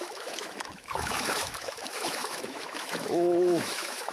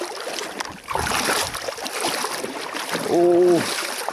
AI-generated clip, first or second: first